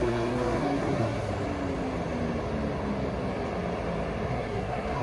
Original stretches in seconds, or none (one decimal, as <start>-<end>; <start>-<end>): 1.3-4.3